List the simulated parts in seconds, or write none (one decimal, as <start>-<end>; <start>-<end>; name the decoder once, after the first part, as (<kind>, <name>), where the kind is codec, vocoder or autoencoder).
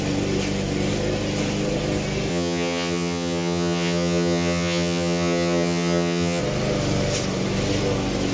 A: 2.3-6.4 (vocoder, HiFi-GAN)